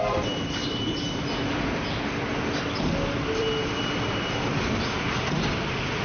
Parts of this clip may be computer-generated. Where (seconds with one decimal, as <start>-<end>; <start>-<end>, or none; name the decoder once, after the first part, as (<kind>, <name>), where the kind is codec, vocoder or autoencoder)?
0.0-3.6 (vocoder, BigVGAN v2)